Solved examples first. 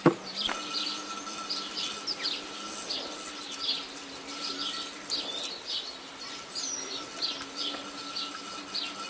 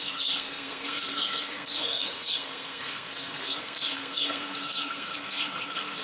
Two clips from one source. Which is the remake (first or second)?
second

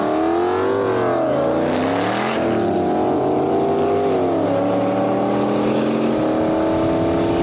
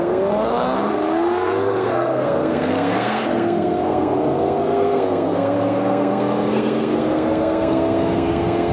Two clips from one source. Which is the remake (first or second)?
second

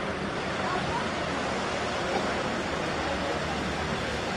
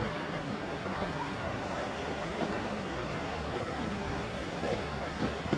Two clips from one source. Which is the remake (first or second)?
second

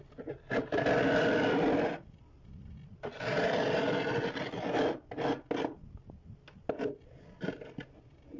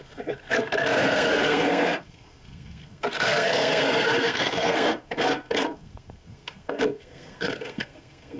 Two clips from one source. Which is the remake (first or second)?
second